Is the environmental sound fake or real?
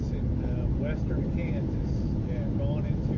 real